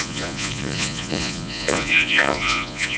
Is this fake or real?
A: fake